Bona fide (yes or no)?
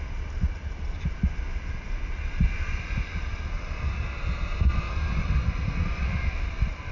yes